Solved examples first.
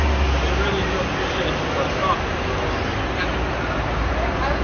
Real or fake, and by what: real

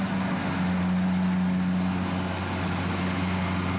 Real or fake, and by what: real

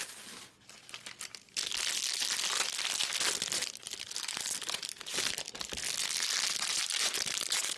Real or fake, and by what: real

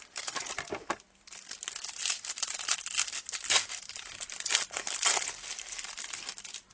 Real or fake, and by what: real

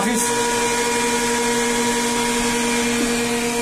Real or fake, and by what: real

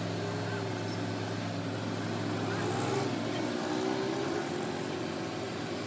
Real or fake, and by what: real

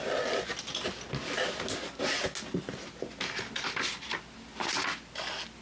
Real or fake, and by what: real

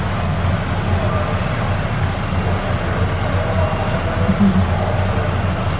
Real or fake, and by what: real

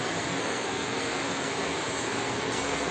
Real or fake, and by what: fake, codec, SNAC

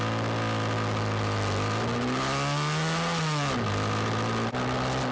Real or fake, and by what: real